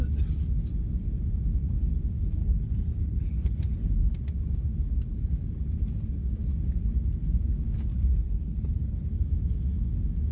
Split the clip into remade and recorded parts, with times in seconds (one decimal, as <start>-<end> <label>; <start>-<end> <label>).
0.0-2.4 recorded; 2.4-4.0 remade; 4.0-7.9 recorded; 7.9-9.1 remade; 9.1-10.3 recorded